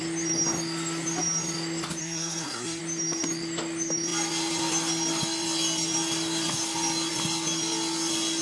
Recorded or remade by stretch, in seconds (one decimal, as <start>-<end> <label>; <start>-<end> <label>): 0.0-2.0 recorded; 2.0-2.8 remade; 2.8-8.4 recorded